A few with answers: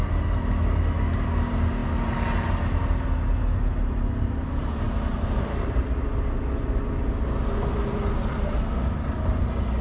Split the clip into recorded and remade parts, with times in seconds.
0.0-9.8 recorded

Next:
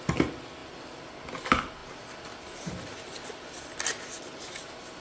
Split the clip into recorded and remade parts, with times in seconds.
0.0-5.0 recorded

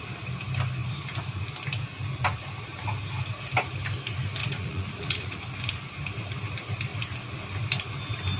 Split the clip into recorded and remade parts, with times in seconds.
0.0-4.4 recorded; 4.4-5.4 remade; 5.4-8.4 recorded